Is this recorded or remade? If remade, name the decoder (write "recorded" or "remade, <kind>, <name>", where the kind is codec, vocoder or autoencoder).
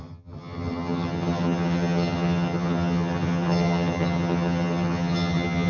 remade, vocoder, HiFi-GAN